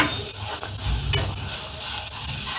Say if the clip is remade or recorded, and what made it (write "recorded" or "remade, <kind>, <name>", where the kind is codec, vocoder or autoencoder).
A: recorded